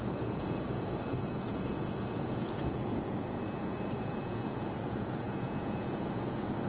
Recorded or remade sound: remade